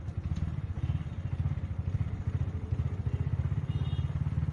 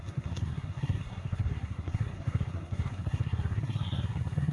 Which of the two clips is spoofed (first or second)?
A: second